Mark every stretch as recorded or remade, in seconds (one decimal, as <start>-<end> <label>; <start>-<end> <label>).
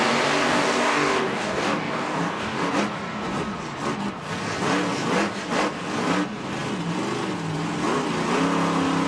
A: 0.0-0.4 recorded; 0.4-2.7 remade; 2.7-9.1 recorded